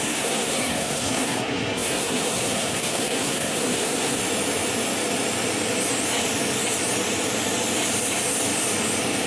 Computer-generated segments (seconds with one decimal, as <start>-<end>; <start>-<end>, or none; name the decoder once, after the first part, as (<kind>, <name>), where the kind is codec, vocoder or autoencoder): 0.0-4.2 (codec, SNAC)